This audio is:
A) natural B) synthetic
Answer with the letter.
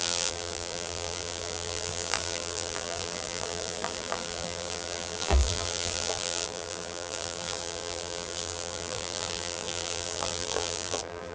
B